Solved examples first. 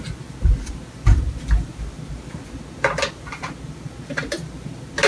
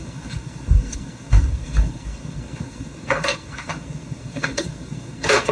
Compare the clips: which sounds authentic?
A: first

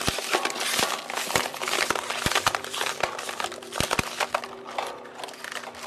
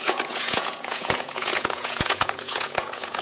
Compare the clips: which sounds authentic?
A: first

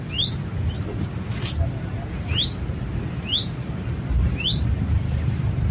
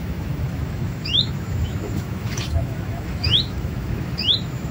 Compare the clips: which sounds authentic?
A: first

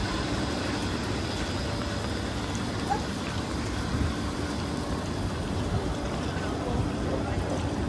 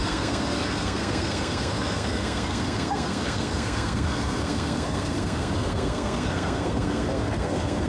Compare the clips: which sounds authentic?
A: first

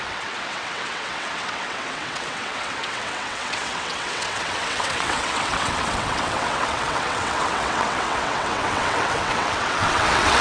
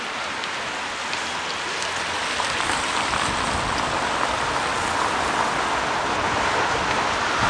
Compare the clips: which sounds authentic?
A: second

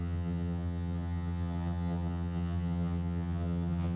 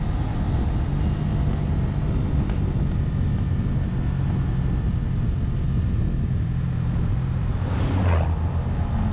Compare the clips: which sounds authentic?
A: second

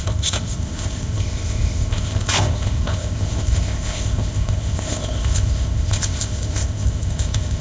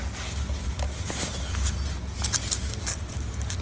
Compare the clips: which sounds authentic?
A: second